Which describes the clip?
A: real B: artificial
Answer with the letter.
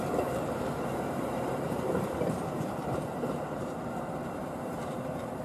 B